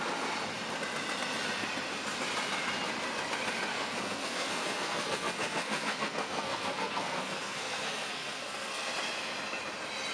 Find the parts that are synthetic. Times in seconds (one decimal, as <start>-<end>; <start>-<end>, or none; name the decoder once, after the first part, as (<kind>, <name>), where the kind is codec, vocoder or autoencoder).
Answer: 3.7-8.9 (codec, SNAC)